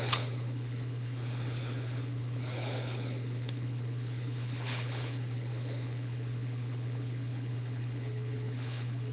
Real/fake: fake